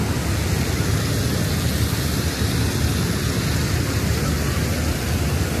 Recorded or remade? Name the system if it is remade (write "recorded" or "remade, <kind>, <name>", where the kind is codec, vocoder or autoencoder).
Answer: recorded